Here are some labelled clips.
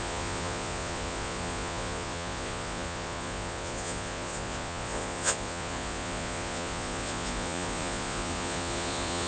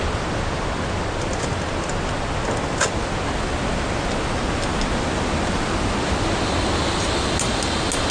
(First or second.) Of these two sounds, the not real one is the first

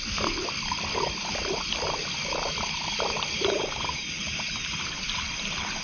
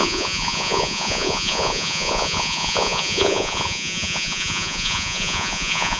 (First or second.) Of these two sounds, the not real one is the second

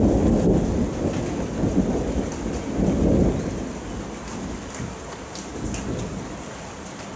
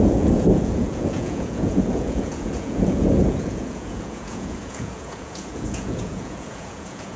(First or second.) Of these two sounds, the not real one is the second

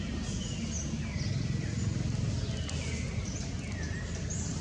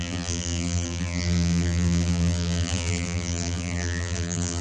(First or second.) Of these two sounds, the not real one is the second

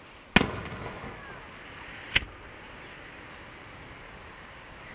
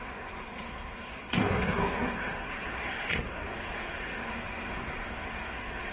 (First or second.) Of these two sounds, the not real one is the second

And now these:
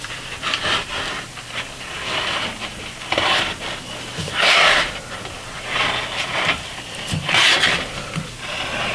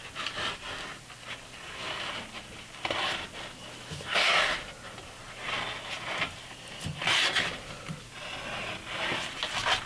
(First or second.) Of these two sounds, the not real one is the first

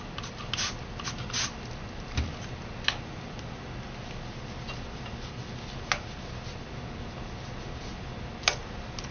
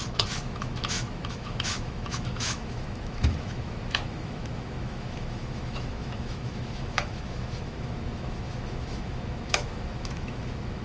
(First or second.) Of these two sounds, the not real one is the second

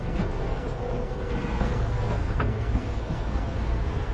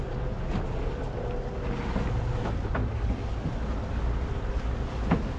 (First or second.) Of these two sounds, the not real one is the first